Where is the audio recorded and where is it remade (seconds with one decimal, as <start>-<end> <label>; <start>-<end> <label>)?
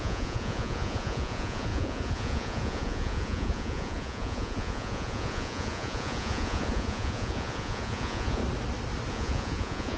0.0-8.4 remade; 8.4-9.1 recorded; 9.1-10.0 remade